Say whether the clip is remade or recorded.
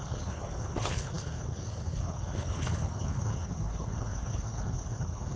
remade